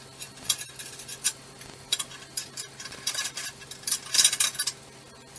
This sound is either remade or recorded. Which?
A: recorded